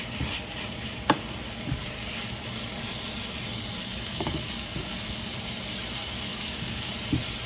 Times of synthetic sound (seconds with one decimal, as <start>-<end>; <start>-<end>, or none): 3.8-5.3; 6.3-6.9